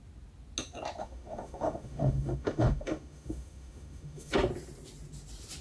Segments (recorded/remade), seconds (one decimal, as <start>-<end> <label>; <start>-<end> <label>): 0.0-1.0 recorded; 1.0-4.3 remade; 4.3-5.6 recorded